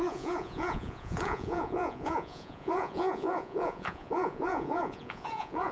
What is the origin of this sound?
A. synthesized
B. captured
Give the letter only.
A